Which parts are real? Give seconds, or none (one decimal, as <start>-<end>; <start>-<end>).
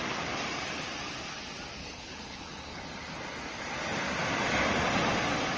0.0-1.8; 2.8-5.6